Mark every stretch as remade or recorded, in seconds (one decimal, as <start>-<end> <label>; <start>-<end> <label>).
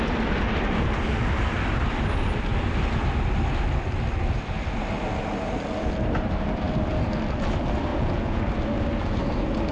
0.0-7.9 recorded; 7.9-8.4 remade; 8.4-9.7 recorded